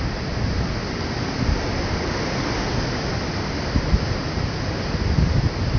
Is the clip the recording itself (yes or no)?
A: yes